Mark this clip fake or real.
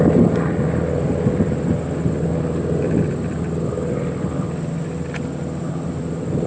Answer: real